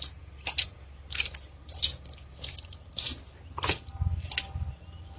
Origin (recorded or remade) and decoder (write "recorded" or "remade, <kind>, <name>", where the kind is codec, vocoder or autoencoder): recorded